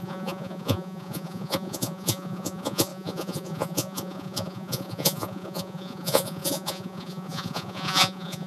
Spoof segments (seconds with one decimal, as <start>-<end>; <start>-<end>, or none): 0.0-8.5